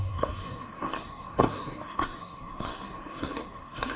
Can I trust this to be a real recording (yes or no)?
no